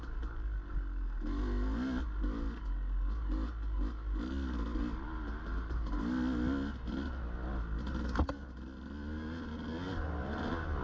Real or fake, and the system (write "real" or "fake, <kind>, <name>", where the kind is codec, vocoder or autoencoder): real